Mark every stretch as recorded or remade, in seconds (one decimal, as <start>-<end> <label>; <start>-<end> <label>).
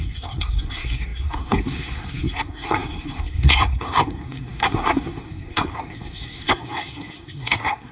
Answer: 0.0-7.9 remade